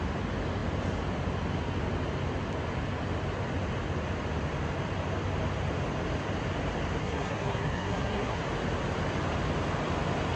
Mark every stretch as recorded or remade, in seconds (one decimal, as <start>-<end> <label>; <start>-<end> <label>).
0.0-7.0 recorded; 7.0-8.4 remade; 8.4-10.4 recorded